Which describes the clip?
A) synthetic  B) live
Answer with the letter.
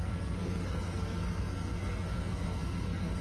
A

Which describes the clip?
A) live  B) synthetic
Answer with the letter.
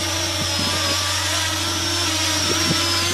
A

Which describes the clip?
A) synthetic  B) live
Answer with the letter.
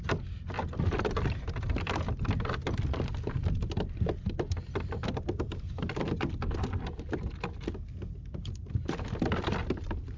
B